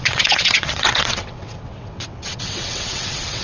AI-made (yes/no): yes